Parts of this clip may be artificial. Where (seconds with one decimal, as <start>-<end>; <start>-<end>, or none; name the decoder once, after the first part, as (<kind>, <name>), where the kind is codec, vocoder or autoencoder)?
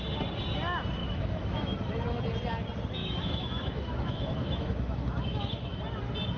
1.0-2.2 (autoencoder, DAC-VAE); 3.0-5.8